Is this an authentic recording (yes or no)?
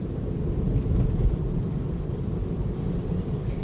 yes